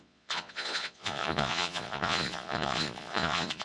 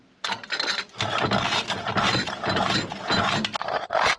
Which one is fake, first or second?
first